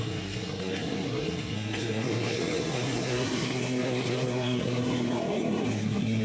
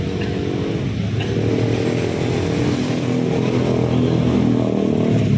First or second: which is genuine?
second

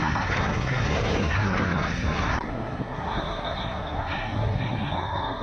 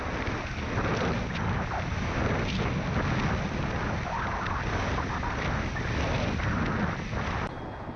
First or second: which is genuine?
second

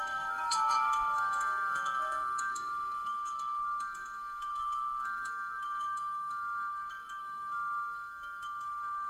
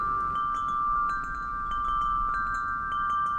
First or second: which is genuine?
second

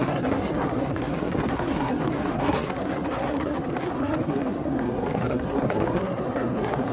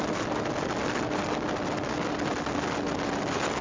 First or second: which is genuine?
second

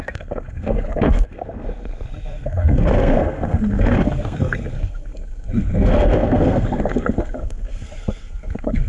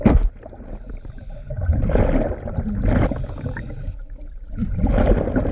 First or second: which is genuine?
second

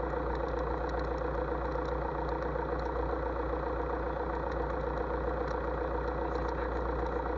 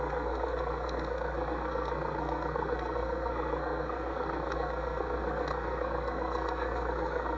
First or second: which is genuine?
first